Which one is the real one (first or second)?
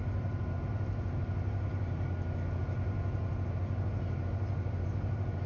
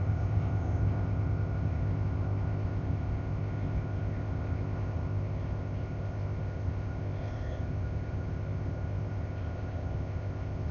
first